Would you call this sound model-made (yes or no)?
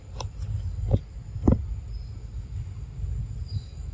no